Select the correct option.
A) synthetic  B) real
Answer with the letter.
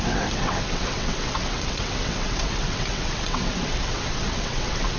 A